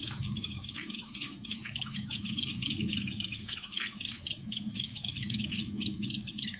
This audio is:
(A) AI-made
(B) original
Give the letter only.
A